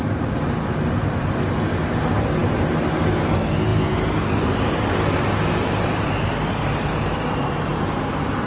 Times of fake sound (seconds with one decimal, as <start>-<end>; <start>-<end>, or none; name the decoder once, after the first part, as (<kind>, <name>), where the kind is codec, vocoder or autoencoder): none